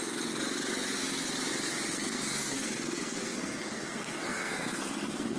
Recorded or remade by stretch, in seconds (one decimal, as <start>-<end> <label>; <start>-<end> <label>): 0.0-1.9 recorded; 1.9-5.4 remade